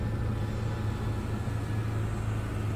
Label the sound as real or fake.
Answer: real